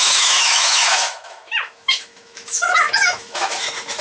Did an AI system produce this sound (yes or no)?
yes